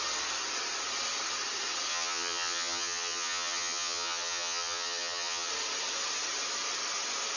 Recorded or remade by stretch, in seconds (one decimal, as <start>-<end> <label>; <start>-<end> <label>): 0.0-1.9 recorded; 1.9-5.5 remade; 5.5-7.4 recorded